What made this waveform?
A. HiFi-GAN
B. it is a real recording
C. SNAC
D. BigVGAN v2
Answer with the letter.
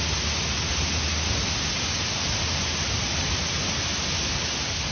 B